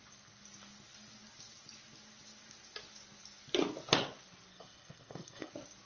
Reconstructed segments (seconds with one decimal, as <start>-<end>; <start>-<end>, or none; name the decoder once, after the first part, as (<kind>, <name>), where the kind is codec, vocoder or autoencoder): 4.5-5.5 (codec, SNAC)

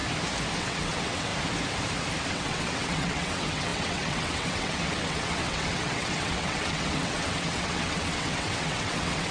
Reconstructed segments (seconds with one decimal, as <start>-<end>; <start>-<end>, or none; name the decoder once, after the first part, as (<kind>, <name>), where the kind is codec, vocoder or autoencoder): 0.6-1.3 (vocoder, WaveNeXt); 2.3-9.3

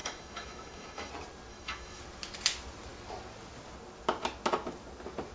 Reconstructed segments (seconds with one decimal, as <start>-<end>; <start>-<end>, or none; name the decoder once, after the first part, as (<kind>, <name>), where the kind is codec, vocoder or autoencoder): 0.0-1.1 (autoencoder, DAC-VAE); 1.5-2.0

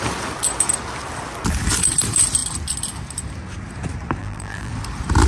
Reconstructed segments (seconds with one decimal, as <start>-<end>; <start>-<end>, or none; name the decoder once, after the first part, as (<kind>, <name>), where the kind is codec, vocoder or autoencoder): 4.2-4.7 (vocoder, BigVGAN v2)

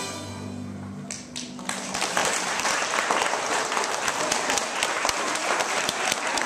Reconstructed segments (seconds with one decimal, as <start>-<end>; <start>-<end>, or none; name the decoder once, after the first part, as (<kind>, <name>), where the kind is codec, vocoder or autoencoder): 2.2-6.1 (vocoder, BigVGAN v2)